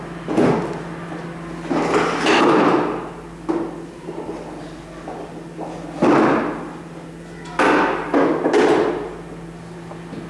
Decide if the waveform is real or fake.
real